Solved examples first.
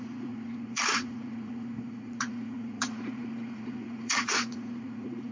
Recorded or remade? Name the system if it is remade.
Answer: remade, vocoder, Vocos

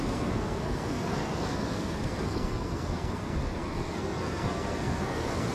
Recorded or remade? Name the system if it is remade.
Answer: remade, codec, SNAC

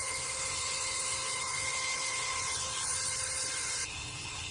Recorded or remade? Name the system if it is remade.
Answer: remade, codec, HILCodec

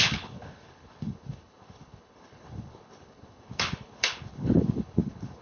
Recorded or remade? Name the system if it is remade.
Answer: remade, codec, HILCodec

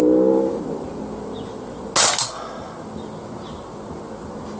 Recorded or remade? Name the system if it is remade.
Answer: recorded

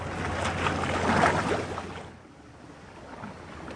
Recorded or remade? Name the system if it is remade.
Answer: recorded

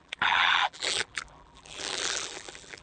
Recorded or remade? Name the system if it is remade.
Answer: remade, vocoder, BigVGAN v2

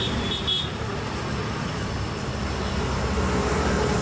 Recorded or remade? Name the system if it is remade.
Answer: recorded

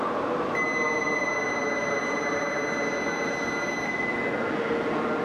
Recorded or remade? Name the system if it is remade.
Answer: recorded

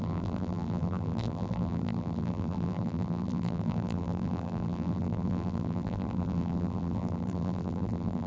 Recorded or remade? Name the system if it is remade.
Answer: remade, vocoder, BigVGAN v2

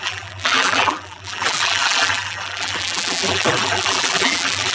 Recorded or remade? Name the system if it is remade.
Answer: remade, vocoder, BigVGAN v2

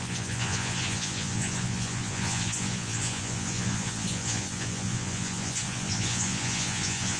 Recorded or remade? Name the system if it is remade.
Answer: remade, vocoder, Vocos